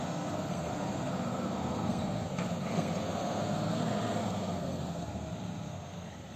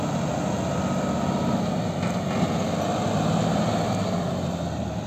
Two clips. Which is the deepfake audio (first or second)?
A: first